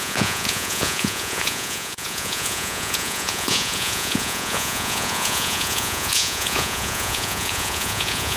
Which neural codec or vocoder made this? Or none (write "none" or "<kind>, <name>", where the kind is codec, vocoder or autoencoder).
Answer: vocoder, Vocos